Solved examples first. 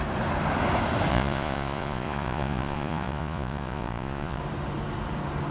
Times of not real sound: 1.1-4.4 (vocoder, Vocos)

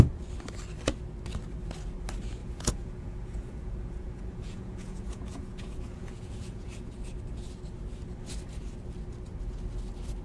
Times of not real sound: 2.4-6.9 (vocoder, Vocos)